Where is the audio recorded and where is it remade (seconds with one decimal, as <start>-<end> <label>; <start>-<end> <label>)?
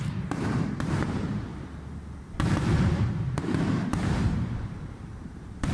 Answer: 0.0-1.5 remade; 1.5-2.8 recorded; 2.8-5.7 remade